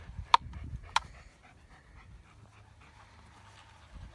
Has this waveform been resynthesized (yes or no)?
no